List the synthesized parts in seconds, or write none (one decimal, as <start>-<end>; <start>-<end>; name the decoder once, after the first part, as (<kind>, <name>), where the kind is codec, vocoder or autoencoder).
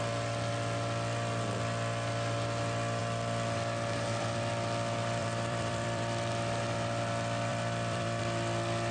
5.2-6.3 (vocoder, BigVGAN v2); 7.5-8.2